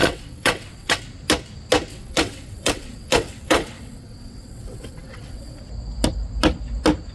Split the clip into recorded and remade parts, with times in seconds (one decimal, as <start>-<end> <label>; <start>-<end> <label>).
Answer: 0.0-1.0 remade; 1.0-1.9 recorded; 1.9-5.6 remade; 5.6-7.1 recorded